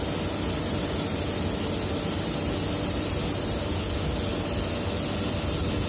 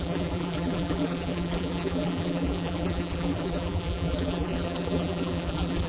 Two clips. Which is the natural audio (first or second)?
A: first